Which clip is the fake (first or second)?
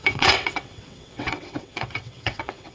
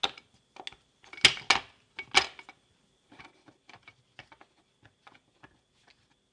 first